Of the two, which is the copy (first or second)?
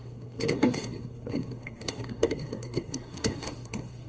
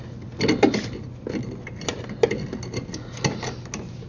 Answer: first